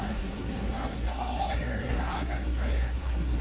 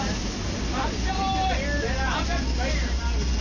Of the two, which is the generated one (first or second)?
first